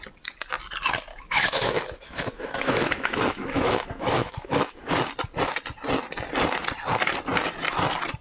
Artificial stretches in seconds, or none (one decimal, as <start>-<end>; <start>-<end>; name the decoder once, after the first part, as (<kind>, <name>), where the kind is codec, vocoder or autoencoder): 1.1-4.8 (autoencoder, DAC-VAE)